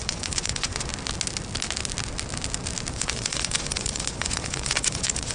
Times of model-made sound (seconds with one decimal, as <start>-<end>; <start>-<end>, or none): 0.0-0.9; 2.9-5.3

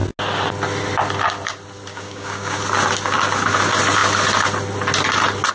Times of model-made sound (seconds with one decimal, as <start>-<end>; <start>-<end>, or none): 1.9-2.6

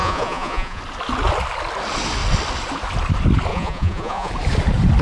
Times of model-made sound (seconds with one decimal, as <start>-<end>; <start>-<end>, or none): 0.0-0.8; 3.5-4.3

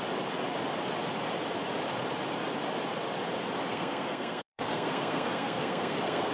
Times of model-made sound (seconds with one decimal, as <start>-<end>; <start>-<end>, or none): 3.7-6.3

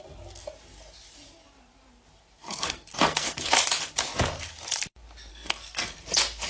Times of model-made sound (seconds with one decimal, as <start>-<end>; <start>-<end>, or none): 2.4-3.6; 5.3-6.1